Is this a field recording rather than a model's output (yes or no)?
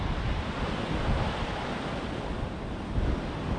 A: yes